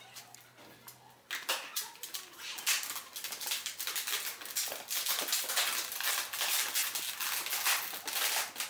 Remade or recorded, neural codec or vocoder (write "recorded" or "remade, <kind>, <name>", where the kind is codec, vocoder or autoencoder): recorded